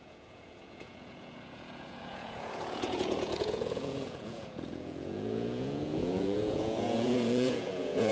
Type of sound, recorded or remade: remade